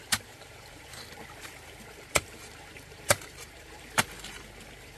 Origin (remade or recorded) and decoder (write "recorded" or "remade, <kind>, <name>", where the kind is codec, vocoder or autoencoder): remade, vocoder, BigVGAN v2